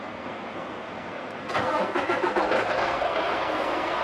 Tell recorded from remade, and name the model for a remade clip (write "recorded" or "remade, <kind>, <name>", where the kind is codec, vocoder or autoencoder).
remade, codec, SNAC